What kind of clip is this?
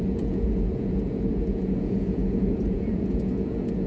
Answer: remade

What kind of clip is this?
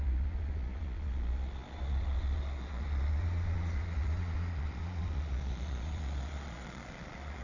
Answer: remade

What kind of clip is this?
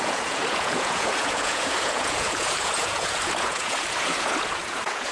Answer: remade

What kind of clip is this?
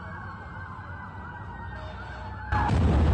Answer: recorded